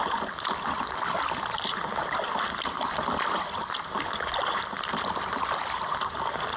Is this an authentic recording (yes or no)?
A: yes